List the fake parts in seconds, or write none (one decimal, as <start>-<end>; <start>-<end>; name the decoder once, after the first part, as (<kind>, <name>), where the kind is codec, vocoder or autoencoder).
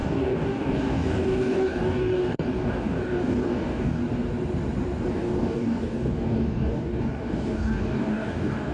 0.0-4.0 (codec, DAC); 5.1-8.7